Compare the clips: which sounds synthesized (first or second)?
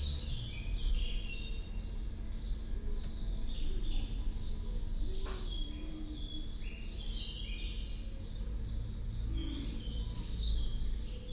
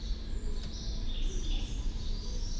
second